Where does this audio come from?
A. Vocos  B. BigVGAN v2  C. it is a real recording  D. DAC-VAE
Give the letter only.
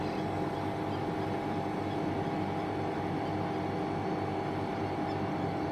C